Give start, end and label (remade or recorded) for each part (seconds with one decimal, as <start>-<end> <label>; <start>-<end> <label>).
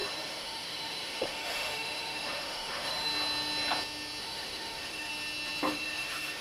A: 0.0-3.1 remade; 3.1-4.2 recorded; 4.2-5.1 remade; 5.1-5.7 recorded; 5.7-6.4 remade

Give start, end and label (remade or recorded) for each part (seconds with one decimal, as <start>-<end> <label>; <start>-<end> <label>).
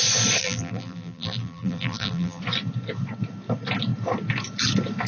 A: 0.0-0.4 recorded; 0.4-2.4 remade; 2.4-5.1 recorded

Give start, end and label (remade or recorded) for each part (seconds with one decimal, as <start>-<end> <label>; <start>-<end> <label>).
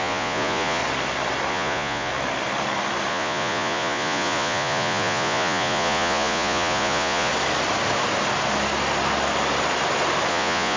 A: 0.0-0.8 remade; 0.8-1.5 recorded; 1.5-2.1 remade; 2.1-3.1 recorded; 3.1-7.3 remade; 7.3-10.3 recorded; 10.3-10.8 remade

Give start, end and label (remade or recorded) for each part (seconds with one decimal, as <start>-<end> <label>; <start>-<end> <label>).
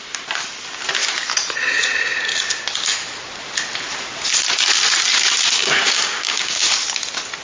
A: 0.0-5.6 recorded; 5.6-6.6 remade; 6.6-7.4 recorded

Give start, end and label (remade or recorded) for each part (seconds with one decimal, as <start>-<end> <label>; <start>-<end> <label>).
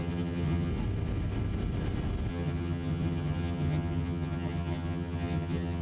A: 0.0-0.7 remade; 0.7-2.3 recorded; 2.3-5.8 remade